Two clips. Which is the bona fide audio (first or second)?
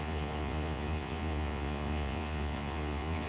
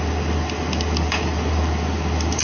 second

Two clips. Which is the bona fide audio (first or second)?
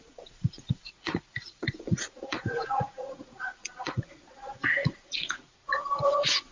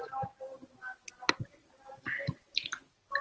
second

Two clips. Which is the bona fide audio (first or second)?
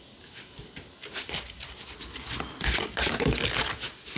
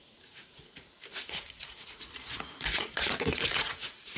first